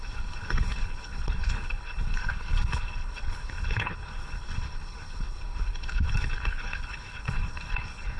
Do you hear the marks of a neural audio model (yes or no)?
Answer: yes